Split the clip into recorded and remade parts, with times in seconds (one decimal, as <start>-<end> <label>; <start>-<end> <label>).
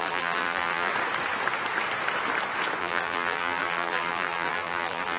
0.0-0.9 remade; 0.9-2.8 recorded; 2.8-5.2 remade